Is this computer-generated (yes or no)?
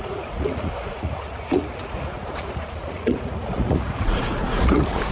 yes